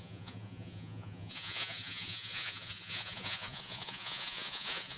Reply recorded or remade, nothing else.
remade